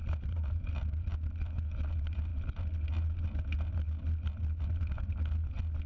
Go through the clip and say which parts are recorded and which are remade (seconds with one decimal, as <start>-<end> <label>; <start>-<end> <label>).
0.0-0.7 remade; 0.7-5.9 recorded